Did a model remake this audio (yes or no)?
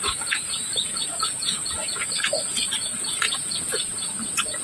yes